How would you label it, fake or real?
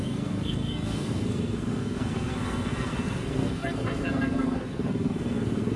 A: fake